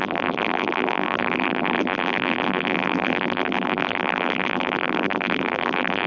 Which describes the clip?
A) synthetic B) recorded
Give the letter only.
A